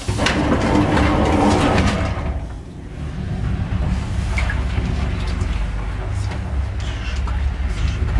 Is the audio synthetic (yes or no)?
no